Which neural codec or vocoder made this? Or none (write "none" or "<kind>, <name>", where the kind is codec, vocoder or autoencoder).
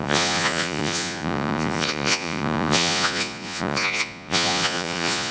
vocoder, Vocos